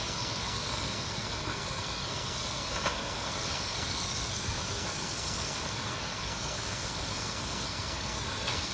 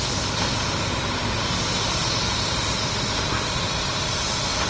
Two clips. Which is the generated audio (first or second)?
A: first